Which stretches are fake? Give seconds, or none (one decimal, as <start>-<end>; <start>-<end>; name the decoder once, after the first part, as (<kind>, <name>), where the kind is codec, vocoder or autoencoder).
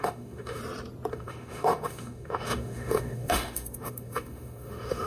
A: 0.0-0.6 (autoencoder, DAC-VAE); 1.1-5.1